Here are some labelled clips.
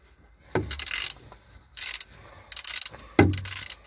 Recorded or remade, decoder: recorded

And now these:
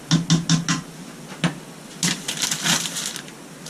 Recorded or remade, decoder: recorded